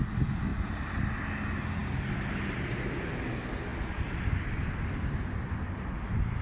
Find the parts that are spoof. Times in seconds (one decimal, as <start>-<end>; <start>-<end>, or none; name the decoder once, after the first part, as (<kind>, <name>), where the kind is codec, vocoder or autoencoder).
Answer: 0.5-1.1 (vocoder, BigVGAN v2); 1.8-2.7